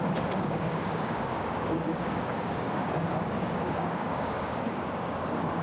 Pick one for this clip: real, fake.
fake